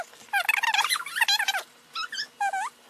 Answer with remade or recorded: recorded